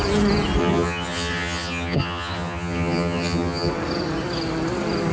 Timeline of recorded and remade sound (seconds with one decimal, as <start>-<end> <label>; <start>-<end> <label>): 0.0-0.6 recorded; 0.6-3.7 remade; 3.7-5.1 recorded